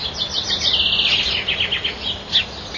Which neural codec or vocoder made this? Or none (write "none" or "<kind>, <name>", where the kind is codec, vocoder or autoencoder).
none